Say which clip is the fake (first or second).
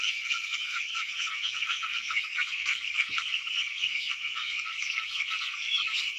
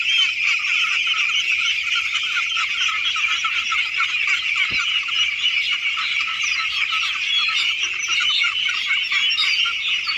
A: first